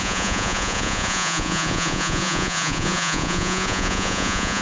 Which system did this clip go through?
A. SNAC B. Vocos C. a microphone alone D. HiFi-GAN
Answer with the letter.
B